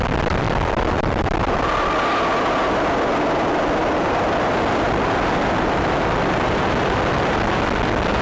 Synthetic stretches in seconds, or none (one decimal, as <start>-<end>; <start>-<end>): 0.0-8.2